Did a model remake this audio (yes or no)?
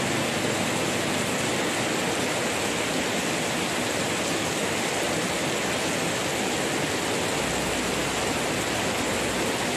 no